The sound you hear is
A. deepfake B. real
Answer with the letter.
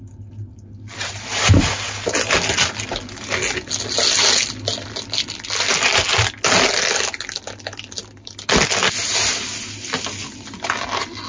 B